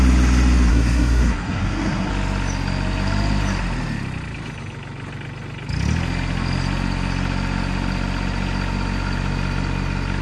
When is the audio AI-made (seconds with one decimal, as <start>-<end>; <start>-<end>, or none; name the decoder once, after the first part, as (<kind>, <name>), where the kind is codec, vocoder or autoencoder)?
0.7-2.1 (codec, SNAC)

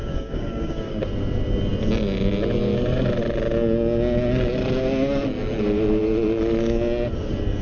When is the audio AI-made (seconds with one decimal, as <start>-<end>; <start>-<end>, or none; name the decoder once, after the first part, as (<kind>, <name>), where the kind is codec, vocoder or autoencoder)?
0.0-1.0 (codec, DAC)

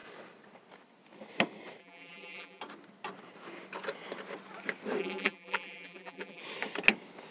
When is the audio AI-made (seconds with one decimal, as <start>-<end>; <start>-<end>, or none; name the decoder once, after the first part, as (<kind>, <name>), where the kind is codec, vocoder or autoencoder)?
1.8-2.6 (vocoder, BigVGAN v2); 5.0-6.4

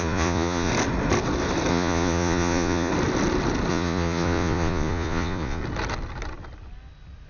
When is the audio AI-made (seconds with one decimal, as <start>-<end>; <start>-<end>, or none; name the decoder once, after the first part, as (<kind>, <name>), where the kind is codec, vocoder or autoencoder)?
0.0-0.7 (vocoder, Vocos); 1.7-2.9; 3.7-5.6

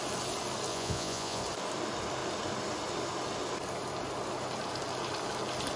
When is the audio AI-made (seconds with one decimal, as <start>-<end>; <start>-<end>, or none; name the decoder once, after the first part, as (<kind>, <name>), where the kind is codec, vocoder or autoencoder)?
0.7-1.4 (vocoder, Vocos)

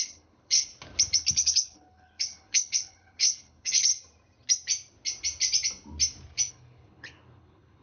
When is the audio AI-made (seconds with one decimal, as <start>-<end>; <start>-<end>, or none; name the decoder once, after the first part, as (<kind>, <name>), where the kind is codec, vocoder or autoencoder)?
0.0-0.7 (codec, HILCodec); 1.3-3.9; 6.5-7.8